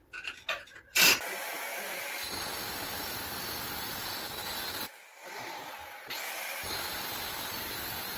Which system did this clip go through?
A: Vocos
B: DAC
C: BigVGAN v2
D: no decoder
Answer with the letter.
D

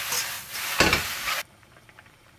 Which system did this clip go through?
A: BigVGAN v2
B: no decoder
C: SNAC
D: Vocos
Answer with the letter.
A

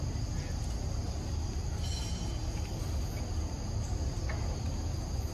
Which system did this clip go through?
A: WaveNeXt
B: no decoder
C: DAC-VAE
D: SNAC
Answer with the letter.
B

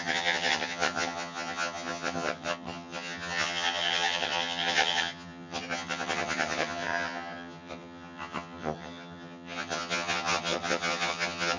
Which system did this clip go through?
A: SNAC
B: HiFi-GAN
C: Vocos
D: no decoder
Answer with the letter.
B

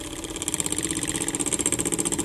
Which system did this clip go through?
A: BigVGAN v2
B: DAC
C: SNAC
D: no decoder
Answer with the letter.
D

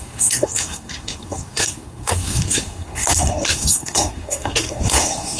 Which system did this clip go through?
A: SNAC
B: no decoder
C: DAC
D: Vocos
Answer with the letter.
A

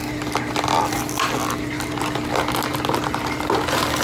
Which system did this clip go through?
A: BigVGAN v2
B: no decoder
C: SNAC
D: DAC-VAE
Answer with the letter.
B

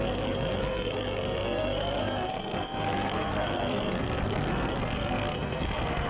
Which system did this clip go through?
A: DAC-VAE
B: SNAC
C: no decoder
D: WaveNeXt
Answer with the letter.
B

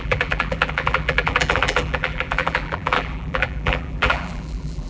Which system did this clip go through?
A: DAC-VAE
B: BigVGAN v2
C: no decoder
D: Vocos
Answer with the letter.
B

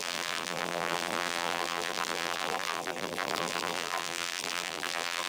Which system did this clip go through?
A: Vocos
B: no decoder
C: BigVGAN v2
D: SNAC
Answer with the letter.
C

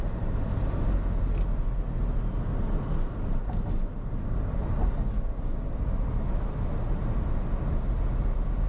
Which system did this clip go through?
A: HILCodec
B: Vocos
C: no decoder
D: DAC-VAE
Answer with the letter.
C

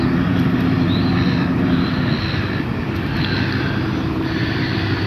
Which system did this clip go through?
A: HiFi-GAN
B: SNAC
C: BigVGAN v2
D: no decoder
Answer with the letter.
D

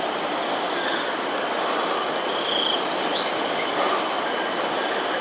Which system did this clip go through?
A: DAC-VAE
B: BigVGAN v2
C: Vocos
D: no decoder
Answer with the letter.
B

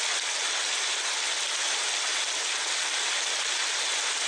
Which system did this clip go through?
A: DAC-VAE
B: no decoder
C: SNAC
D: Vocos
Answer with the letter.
B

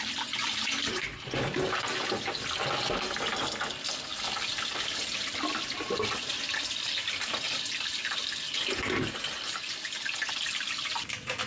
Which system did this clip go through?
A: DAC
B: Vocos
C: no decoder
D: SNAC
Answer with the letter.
C